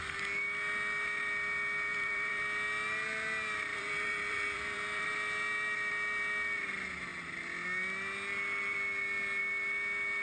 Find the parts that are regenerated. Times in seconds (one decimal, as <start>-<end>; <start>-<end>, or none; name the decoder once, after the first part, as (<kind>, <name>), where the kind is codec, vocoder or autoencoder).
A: 1.9-2.4 (vocoder, BigVGAN v2); 3.7-5.1